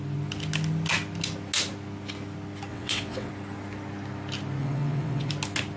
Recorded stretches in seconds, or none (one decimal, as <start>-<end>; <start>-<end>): 0.0-2.7; 3.3-4.6; 5.3-5.8

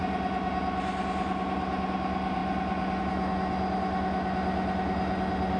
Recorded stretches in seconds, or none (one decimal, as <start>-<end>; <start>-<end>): 0.0-5.6

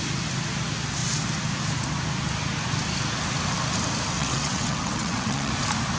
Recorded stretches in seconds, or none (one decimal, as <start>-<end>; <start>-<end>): 0.0-4.2; 5.5-6.0